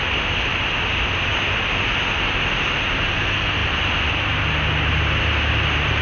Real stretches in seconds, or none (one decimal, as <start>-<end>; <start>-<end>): 0.0-6.0